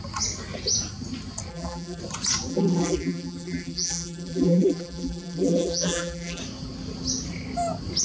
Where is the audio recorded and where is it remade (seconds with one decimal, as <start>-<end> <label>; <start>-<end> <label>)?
0.0-1.5 recorded; 1.5-2.0 remade; 2.0-2.5 recorded; 2.5-6.4 remade; 6.4-8.0 recorded